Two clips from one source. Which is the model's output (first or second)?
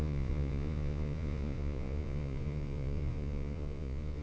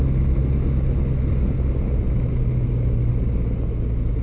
first